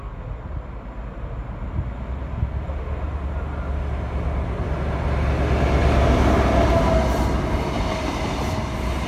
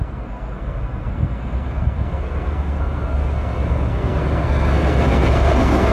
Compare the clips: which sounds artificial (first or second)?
second